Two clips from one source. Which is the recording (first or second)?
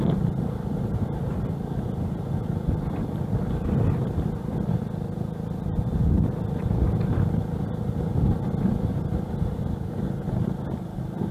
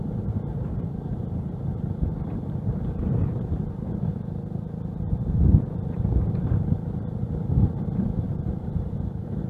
first